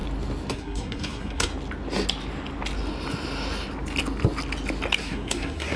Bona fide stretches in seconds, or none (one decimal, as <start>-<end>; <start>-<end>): 0.0-0.5; 1.5-5.0